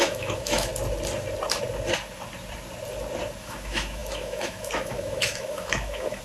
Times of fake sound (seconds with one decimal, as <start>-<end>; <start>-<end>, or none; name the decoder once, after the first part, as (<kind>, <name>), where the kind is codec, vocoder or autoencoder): 0.0-0.7 (autoencoder, DAC-VAE); 3.4-6.2